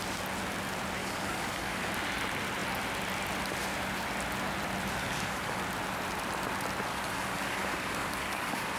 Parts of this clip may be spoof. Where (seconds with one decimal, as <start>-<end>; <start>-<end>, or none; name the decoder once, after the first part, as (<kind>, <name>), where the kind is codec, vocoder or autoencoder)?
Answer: 1.0-1.9 (codec, DAC); 5.0-5.6; 6.9-8.8